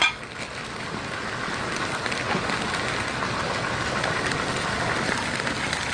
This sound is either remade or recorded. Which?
recorded